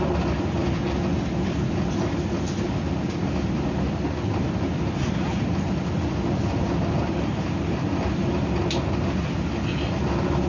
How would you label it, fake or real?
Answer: real